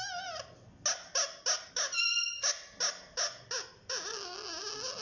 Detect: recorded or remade recorded